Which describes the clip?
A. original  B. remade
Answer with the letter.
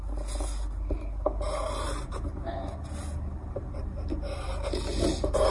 A